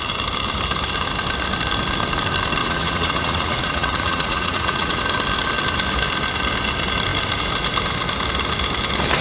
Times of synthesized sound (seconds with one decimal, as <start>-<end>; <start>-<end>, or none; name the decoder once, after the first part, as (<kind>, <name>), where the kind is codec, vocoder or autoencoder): 2.6-5.0 (vocoder, Vocos)